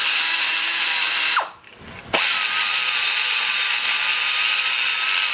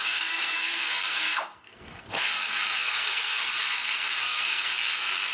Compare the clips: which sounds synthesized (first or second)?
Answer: second